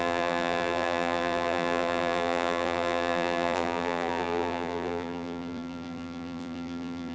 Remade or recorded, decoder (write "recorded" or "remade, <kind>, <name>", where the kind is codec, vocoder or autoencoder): remade, vocoder, BigVGAN v2